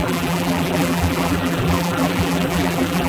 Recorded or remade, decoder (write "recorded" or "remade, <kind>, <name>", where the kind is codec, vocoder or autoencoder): remade, vocoder, BigVGAN v2